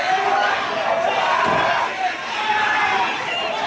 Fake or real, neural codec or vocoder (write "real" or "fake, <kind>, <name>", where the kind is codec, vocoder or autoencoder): real